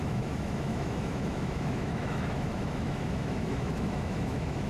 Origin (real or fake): fake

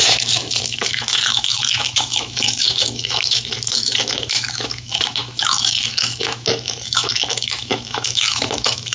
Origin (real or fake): fake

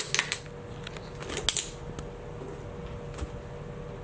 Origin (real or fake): real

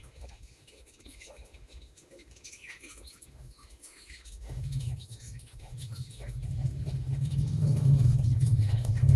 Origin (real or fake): fake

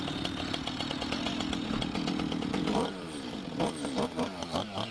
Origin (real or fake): real